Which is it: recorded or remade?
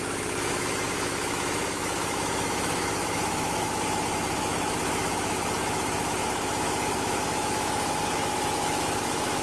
remade